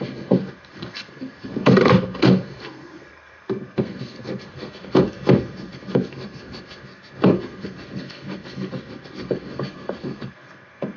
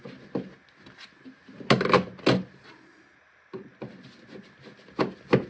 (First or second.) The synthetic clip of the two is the first